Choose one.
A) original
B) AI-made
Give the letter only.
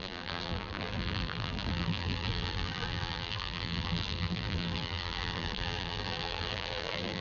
B